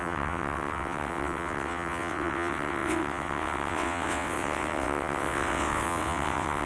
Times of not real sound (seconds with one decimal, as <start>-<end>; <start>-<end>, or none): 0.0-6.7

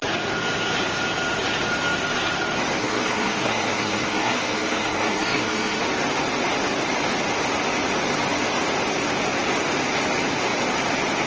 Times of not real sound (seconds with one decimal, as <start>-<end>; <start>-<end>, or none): 2.8-5.8

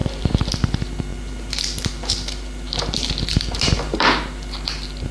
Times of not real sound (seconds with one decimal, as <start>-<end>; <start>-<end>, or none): 0.0-0.5; 1.1-4.2